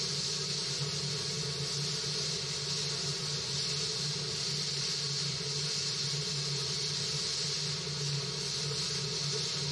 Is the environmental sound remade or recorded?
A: recorded